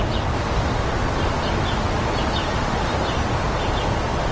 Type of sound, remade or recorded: recorded